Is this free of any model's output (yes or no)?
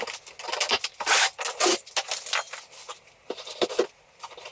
yes